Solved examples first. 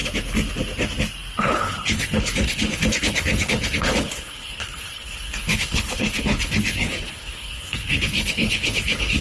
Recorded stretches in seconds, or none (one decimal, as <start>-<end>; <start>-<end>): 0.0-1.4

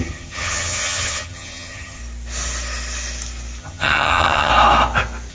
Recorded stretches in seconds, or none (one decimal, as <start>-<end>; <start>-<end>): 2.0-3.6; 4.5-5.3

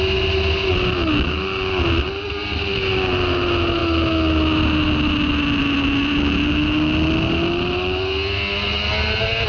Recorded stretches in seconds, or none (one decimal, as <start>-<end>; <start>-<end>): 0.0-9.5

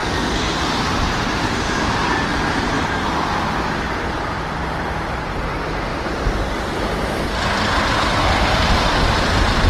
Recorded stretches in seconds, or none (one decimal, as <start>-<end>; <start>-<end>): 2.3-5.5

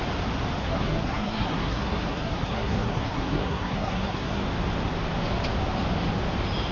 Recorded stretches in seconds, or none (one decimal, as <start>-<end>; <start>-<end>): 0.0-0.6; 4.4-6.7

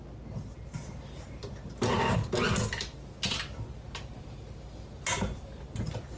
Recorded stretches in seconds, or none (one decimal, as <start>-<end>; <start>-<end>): 0.0-6.2

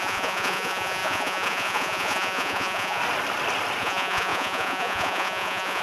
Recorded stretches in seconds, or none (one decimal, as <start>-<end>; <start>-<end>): 3.0-3.8